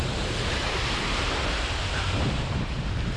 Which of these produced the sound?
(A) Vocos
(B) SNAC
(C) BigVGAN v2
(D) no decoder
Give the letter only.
C